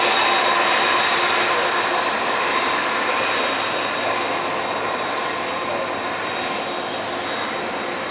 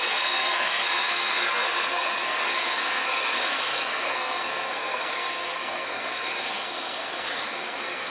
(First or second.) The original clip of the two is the first